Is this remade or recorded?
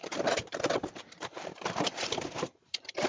remade